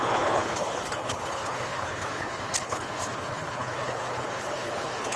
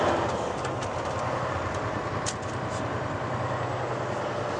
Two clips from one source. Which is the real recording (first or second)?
second